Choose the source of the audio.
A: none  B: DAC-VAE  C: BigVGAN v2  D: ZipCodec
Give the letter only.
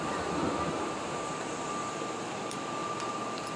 A